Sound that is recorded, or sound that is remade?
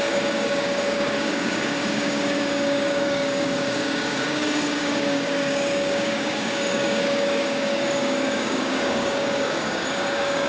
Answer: remade